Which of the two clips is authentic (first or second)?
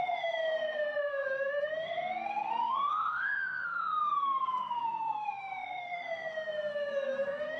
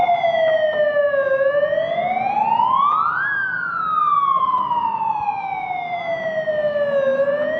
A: second